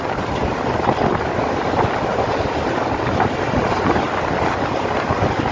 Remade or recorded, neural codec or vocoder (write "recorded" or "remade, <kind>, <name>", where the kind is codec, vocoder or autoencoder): recorded